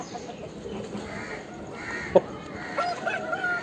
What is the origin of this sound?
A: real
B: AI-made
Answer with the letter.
A